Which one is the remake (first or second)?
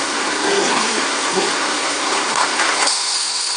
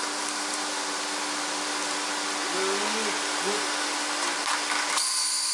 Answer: first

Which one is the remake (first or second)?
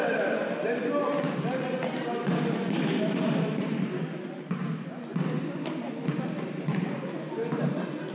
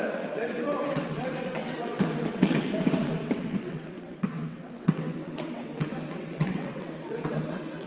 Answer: second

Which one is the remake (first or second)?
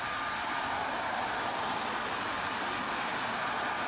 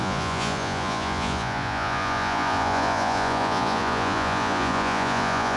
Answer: second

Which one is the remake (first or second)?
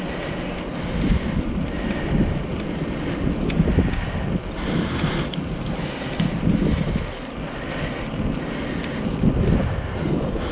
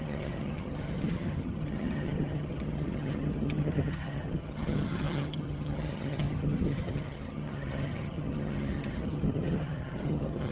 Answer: second